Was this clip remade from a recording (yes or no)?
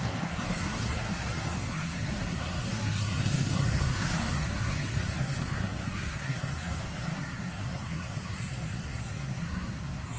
yes